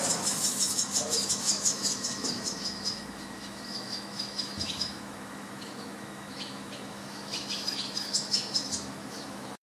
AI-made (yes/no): yes